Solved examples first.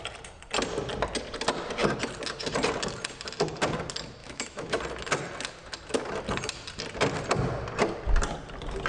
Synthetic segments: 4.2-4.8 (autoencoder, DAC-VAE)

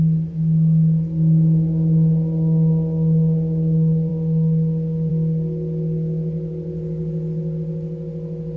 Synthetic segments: none

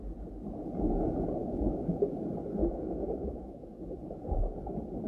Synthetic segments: 1.4-2.0 (autoencoder, DAC-VAE); 2.6-3.7

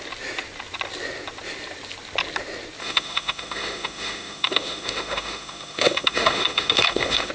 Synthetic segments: 2.8-7.3 (autoencoder, DAC-VAE)